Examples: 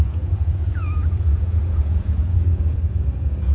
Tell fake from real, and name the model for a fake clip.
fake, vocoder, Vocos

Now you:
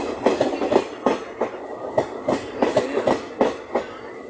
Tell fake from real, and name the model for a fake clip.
real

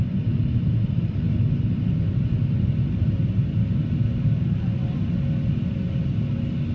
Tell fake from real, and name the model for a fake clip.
real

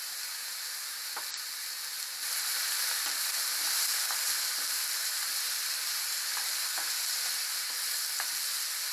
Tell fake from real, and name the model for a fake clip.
real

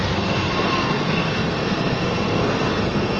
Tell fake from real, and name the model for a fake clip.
fake, codec, SNAC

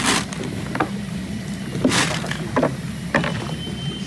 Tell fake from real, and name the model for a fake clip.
real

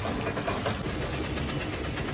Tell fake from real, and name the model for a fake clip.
real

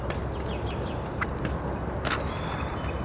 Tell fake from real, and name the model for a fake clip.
real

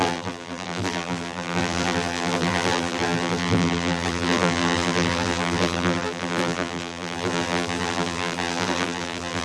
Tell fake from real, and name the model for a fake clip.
fake, vocoder, BigVGAN v2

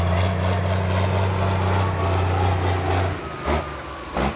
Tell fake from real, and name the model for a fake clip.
real